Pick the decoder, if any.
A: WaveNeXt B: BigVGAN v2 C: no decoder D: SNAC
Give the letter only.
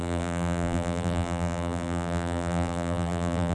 B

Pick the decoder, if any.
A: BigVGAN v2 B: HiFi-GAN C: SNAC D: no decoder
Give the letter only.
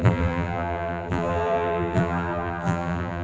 A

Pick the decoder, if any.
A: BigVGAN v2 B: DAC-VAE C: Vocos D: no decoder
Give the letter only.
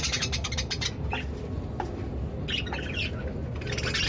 D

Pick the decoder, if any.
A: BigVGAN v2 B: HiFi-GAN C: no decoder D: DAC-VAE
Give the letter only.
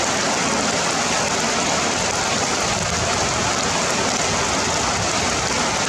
C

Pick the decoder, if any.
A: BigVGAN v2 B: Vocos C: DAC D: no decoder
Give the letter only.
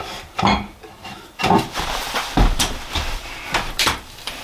A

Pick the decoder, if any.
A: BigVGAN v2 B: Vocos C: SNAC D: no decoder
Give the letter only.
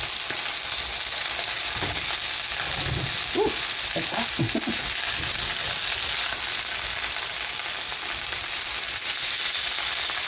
D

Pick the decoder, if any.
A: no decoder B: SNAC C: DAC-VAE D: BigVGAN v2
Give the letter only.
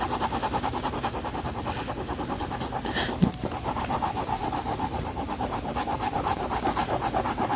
D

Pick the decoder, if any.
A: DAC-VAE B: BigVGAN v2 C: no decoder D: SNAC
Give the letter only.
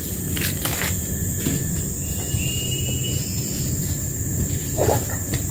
C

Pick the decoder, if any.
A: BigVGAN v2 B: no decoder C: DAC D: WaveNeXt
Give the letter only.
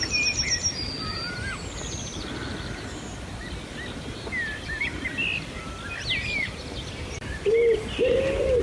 B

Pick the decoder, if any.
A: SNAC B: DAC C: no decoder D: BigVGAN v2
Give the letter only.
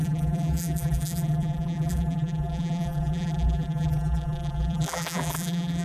D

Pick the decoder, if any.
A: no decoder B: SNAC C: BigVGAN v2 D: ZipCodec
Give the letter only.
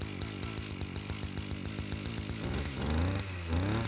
A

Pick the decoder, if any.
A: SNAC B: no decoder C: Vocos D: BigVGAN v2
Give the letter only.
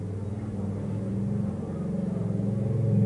B